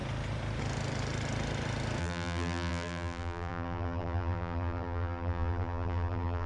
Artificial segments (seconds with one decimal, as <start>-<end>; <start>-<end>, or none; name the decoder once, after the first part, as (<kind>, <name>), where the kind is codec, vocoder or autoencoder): 2.0-6.5 (vocoder, BigVGAN v2)